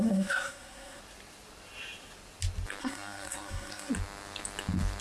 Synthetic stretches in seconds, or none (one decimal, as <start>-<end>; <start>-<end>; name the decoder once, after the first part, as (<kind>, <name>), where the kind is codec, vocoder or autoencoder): 0.0-1.0 (codec, SNAC); 2.8-3.9